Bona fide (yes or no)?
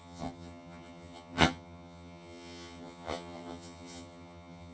no